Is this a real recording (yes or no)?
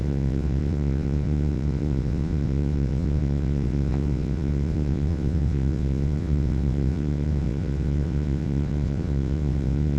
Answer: no